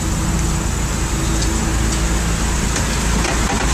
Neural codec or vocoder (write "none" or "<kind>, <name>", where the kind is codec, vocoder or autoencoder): none